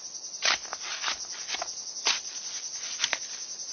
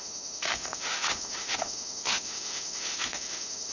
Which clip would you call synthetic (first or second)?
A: second